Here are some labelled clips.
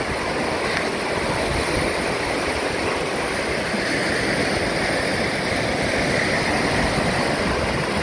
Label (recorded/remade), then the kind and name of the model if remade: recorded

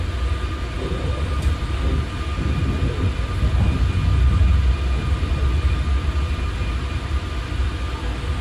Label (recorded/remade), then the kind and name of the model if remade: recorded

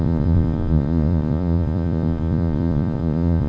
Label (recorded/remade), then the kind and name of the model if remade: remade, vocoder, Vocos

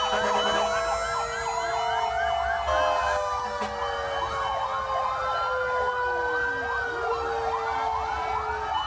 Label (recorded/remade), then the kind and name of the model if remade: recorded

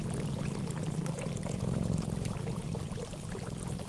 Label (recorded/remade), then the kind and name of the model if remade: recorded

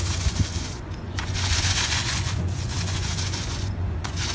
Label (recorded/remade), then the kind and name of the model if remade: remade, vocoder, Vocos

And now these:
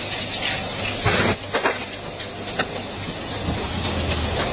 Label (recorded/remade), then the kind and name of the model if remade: recorded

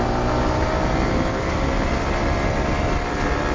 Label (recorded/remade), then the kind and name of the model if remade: recorded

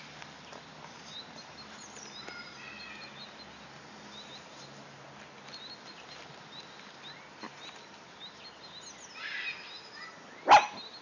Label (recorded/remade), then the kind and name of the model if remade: recorded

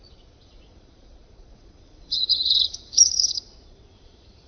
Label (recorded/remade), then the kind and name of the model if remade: remade, vocoder, Vocos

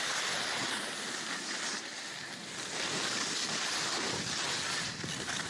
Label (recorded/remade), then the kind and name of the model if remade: recorded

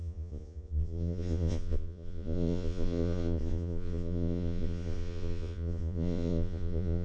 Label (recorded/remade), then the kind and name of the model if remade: remade, vocoder, Vocos